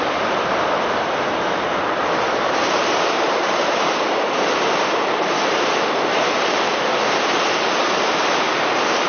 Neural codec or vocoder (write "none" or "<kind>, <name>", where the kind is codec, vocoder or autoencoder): vocoder, BigVGAN v2